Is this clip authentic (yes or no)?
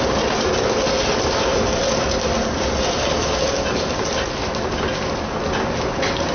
yes